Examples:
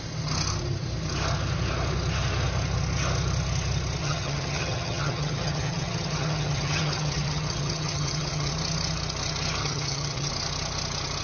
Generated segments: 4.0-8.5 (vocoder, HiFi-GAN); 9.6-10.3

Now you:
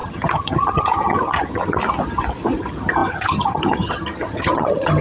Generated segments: 0.0-1.8 (vocoder, HiFi-GAN); 2.6-5.0